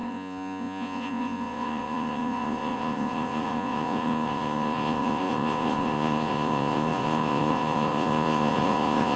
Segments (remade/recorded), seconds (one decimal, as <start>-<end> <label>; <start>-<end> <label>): 0.0-9.2 remade